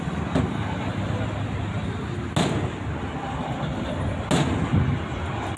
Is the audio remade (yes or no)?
no